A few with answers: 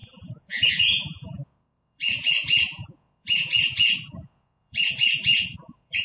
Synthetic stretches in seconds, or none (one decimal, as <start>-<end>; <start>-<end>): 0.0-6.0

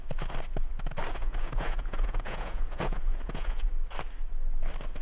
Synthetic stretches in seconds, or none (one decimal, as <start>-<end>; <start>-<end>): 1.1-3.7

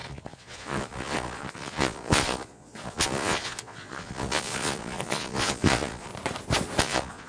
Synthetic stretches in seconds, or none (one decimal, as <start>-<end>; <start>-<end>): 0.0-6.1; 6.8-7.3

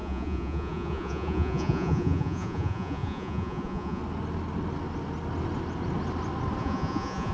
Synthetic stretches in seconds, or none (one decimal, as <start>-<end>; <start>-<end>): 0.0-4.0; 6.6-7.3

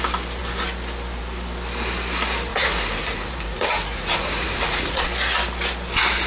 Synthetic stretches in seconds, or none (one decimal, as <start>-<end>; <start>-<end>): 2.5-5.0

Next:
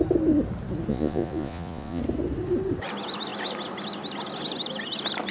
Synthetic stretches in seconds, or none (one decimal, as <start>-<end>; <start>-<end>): 0.9-2.0

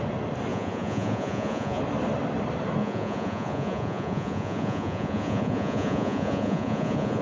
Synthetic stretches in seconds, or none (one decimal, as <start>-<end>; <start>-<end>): 0.5-1.8; 2.8-7.2

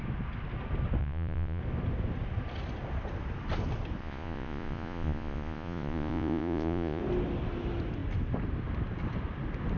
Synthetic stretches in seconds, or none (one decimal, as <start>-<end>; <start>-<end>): 1.0-1.6; 4.0-7.0